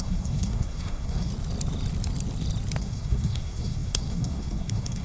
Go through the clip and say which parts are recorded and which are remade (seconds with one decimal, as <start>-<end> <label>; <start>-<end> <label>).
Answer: 0.0-1.3 remade; 1.3-2.8 recorded; 2.8-5.0 remade

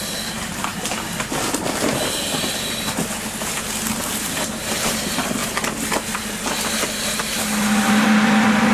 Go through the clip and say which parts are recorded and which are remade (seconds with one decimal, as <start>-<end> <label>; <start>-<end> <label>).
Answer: 0.0-8.7 recorded

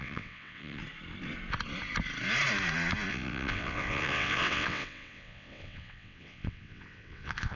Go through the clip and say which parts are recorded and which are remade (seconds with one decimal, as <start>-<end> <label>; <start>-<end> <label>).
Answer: 0.0-0.8 remade; 0.8-3.1 recorded; 3.1-7.6 remade

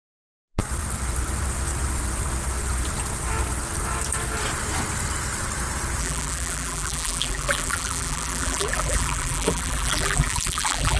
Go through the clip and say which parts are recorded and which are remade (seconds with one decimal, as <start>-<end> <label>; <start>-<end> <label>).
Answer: 0.0-6.0 recorded; 6.0-11.0 remade

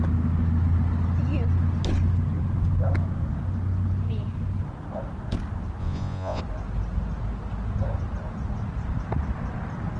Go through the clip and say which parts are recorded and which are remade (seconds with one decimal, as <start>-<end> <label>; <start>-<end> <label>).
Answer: 0.0-5.8 recorded; 5.8-6.4 remade; 6.4-10.0 recorded

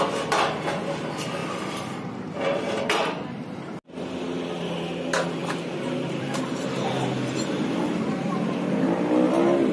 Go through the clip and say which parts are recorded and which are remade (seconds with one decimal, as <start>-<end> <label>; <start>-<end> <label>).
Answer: 0.0-1.4 recorded; 1.4-4.1 remade; 4.1-5.4 recorded; 5.4-7.7 remade; 7.7-9.7 recorded